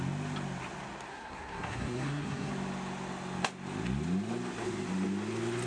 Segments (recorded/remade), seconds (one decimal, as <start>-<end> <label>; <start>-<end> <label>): 0.0-1.1 recorded; 1.1-2.5 remade; 2.5-5.7 recorded